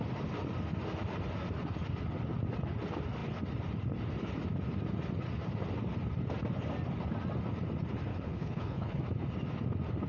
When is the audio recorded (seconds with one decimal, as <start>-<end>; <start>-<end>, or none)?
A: 0.0-8.1; 9.0-10.1